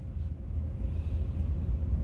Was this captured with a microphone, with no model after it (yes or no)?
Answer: yes